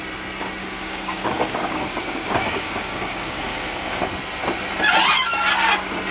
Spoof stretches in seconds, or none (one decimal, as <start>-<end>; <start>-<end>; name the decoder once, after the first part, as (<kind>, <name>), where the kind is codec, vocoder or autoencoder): 0.6-4.0 (codec, DAC)